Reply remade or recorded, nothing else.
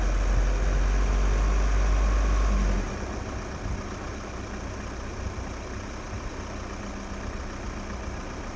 recorded